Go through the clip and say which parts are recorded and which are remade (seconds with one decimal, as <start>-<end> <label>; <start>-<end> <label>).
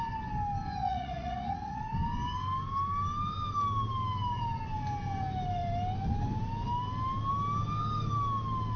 0.0-0.8 recorded; 0.8-1.8 remade; 1.8-8.8 recorded